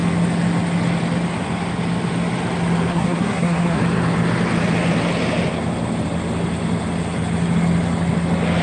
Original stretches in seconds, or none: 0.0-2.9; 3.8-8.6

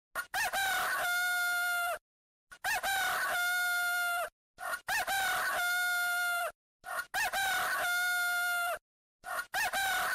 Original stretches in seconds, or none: 0.0-10.1

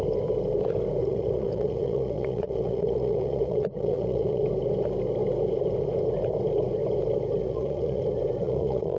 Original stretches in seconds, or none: 0.0-1.0; 4.4-7.4; 8.0-8.4

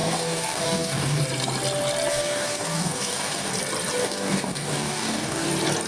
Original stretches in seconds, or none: 1.2-2.1; 3.5-4.0; 5.5-5.9